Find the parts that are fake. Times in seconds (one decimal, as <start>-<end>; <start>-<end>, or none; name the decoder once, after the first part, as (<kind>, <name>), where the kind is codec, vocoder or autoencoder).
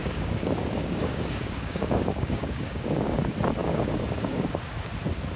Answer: 0.0-3.2 (codec, DAC); 3.6-4.9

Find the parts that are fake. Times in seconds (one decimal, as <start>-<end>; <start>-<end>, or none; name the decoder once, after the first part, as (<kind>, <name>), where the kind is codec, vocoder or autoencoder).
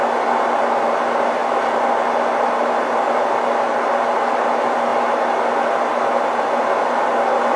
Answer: none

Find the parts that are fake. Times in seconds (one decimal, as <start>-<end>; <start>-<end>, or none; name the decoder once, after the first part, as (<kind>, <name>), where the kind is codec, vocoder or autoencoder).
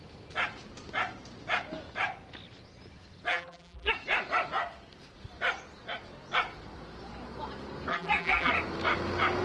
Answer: 3.3-3.9 (vocoder, BigVGAN v2); 7.9-8.5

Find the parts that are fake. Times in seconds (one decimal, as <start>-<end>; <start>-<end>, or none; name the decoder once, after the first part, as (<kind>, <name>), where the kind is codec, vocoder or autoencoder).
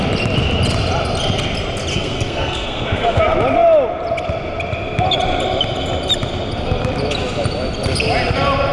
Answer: 1.9-3.2 (codec, SNAC)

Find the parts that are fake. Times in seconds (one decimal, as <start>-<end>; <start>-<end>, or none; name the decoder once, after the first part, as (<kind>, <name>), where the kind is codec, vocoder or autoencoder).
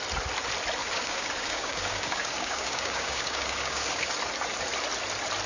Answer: 0.8-4.1 (codec, DAC)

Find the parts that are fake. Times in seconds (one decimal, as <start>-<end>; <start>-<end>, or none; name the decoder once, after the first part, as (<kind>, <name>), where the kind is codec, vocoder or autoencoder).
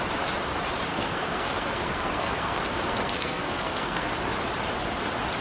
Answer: 0.9-4.1 (codec, SNAC)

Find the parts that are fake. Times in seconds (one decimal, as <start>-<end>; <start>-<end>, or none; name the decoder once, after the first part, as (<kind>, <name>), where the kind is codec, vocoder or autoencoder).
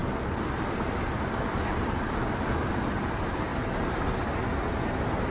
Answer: none